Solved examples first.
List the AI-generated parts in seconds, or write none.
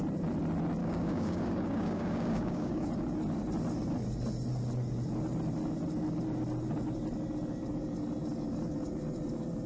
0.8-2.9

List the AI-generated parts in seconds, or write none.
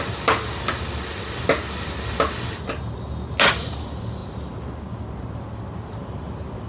none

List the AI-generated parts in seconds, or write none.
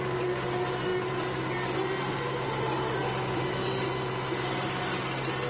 none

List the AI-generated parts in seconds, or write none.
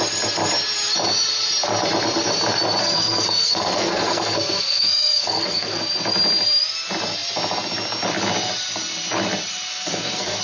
2.8-5.8; 9.7-10.4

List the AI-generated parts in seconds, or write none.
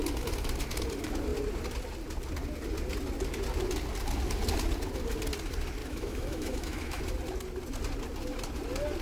5.8-7.0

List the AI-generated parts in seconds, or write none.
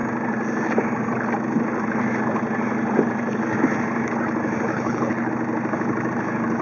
4.7-5.3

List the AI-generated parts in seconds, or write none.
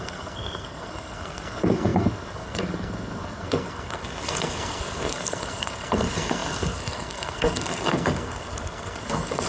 0.0-9.5